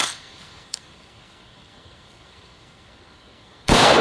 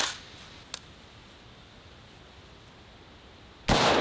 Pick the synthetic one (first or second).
first